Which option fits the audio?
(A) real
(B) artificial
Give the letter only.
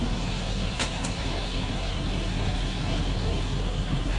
B